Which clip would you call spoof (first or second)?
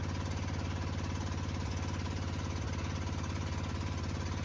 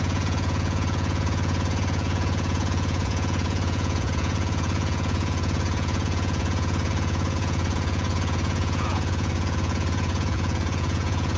second